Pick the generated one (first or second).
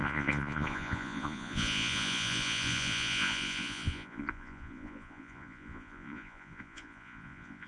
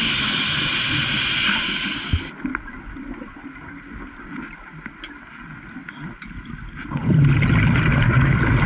first